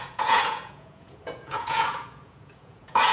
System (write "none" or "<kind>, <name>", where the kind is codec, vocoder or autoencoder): vocoder, Vocos